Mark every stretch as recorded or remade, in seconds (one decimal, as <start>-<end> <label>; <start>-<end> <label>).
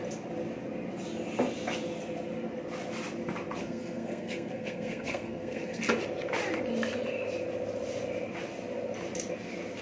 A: 0.0-3.6 recorded; 3.6-5.8 remade; 5.8-9.8 recorded